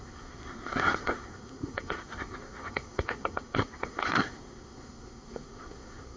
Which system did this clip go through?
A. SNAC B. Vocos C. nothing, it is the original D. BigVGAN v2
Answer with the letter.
A